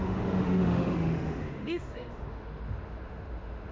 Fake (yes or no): yes